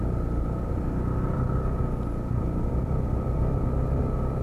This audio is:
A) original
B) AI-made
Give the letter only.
B